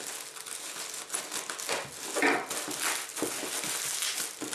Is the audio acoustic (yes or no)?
yes